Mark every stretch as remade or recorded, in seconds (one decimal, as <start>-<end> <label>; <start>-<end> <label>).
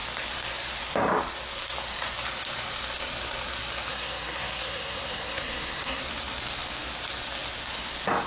0.0-3.9 recorded; 3.9-6.0 remade; 6.0-8.3 recorded